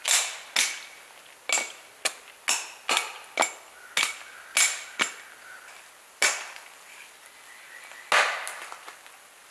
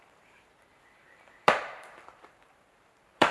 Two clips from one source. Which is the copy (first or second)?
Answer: second